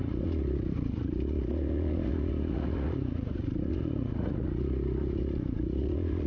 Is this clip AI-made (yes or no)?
yes